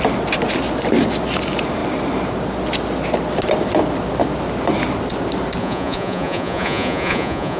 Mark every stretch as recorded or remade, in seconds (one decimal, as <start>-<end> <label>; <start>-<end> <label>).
0.0-5.6 recorded; 5.6-7.6 remade